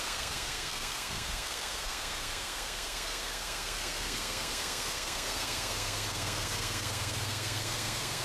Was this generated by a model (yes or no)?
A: yes